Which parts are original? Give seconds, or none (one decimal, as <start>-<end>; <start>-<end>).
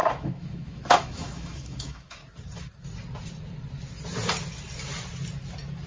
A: 2.2-5.9